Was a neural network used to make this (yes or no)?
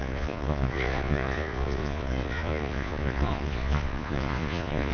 yes